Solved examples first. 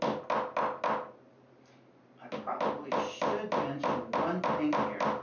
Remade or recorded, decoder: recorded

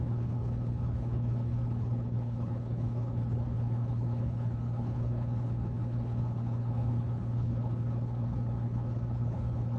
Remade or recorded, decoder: remade, codec, HILCodec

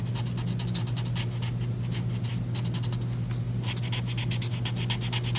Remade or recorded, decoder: recorded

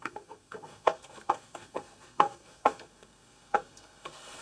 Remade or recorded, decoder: remade, codec, SNAC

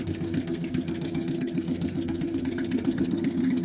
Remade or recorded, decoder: remade, codec, SNAC